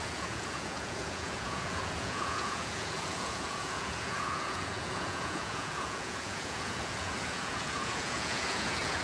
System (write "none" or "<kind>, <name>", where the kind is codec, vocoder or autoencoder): vocoder, Vocos